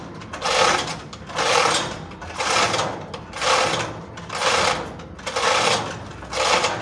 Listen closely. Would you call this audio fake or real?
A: real